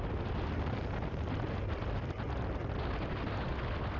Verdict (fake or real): real